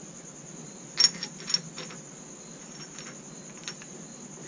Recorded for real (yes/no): yes